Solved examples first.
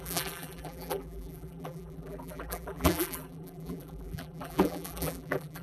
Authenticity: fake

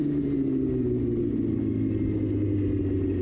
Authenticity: real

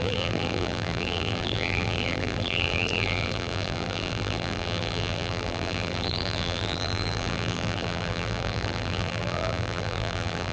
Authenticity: fake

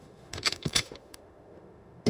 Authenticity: fake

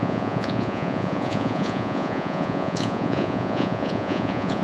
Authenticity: fake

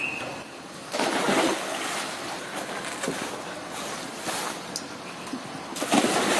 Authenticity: real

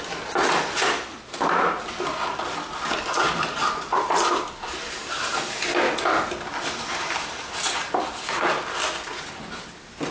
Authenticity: real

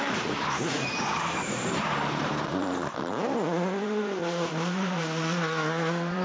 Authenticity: fake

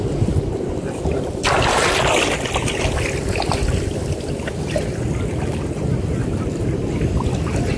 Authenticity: real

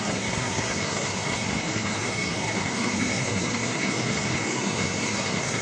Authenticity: fake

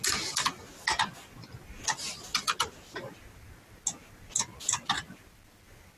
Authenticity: real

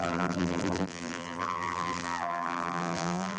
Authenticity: fake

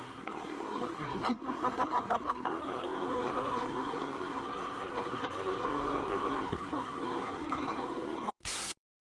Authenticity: fake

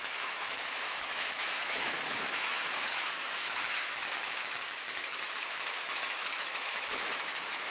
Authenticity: fake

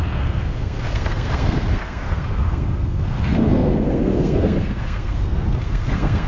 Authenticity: fake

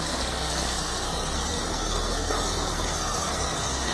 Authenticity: fake